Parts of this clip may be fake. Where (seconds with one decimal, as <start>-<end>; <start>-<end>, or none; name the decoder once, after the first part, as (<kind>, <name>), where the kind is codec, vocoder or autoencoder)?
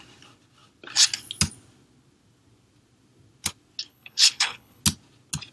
3.9-4.8 (codec, HILCodec)